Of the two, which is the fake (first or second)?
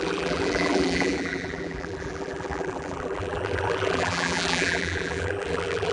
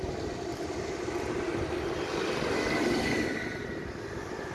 first